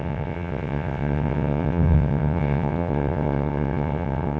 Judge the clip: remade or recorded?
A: remade